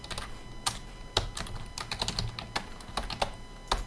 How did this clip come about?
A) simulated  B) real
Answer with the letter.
B